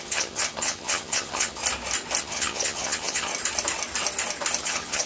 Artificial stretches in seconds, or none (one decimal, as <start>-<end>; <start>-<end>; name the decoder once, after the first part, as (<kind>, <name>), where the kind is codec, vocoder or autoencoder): 0.0-1.6 (vocoder, HiFi-GAN); 2.2-3.3; 4.6-5.1